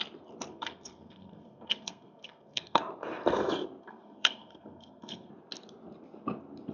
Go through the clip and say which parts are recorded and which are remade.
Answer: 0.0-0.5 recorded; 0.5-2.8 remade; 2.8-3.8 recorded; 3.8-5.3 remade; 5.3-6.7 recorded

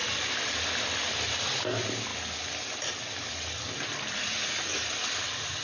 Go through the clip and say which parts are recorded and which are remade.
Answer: 0.0-2.1 recorded; 2.1-2.9 remade; 2.9-5.6 recorded